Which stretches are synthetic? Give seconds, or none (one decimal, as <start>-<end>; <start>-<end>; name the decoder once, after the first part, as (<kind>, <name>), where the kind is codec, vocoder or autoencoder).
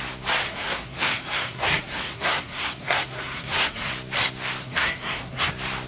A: 0.4-3.9 (codec, SNAC); 4.6-5.5